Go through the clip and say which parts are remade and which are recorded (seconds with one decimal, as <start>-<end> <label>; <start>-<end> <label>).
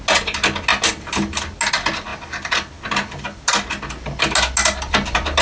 0.0-5.4 recorded